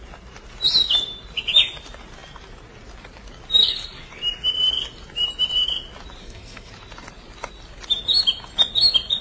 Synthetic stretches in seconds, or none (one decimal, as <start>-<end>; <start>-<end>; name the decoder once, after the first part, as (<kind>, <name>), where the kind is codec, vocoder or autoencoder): 6.2-6.7 (codec, SNAC)